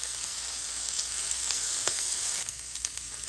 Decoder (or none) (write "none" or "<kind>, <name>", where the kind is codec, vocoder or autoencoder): codec, SNAC